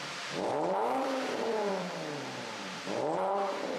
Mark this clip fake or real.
fake